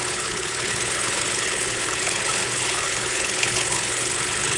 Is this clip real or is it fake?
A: fake